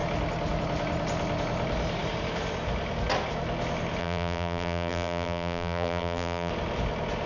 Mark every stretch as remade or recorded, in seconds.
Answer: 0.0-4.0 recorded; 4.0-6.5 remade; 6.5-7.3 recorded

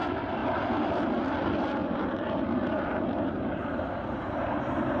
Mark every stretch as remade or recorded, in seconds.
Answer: 0.0-0.4 recorded; 0.4-1.4 remade; 1.4-1.8 recorded; 1.8-4.4 remade; 4.4-5.0 recorded

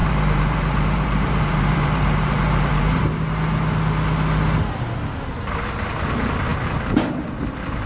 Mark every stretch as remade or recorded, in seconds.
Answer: 0.0-3.0 remade; 3.0-7.9 recorded